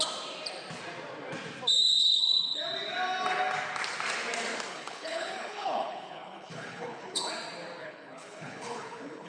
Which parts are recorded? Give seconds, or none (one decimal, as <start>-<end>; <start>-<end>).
0.0-2.0; 2.6-4.7; 7.3-7.8